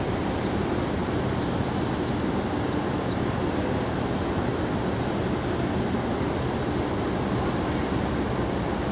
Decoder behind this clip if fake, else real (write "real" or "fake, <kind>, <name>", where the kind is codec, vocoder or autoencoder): real